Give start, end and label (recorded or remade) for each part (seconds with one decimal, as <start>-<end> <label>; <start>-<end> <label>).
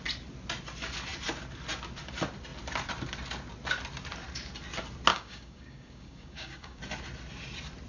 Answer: 0.0-5.1 recorded; 5.1-6.8 remade; 6.8-7.9 recorded